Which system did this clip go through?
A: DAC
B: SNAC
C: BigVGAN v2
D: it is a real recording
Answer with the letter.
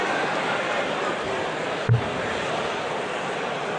C